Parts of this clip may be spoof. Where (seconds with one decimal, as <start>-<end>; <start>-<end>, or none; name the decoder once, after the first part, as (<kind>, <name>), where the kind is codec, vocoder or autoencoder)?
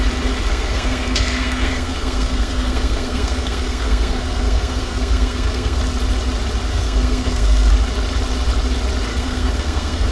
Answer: 0.5-5.8 (codec, SNAC); 6.7-7.7; 9.1-10.1